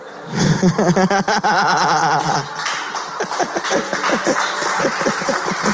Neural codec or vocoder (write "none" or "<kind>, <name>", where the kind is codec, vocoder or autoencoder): none